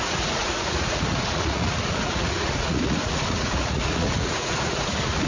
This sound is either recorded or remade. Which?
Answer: remade